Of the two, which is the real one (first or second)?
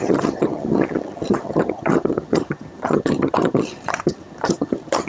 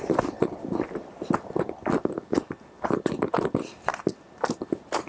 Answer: second